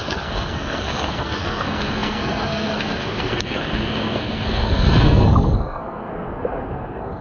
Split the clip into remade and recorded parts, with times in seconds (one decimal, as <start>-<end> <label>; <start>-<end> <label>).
0.0-7.2 remade